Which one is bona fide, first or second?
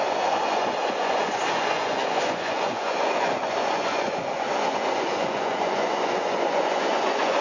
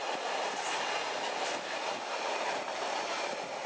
second